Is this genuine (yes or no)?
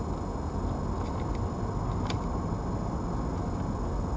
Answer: yes